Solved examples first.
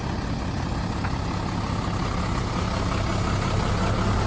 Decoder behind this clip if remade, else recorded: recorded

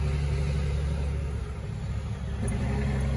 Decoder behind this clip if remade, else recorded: recorded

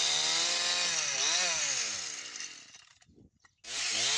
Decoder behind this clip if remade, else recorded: recorded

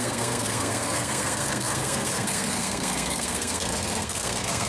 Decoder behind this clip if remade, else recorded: remade, codec, SNAC